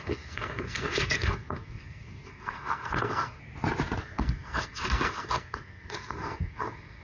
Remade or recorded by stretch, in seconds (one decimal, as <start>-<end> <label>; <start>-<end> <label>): 0.0-3.4 remade; 3.4-4.0 recorded; 4.0-7.0 remade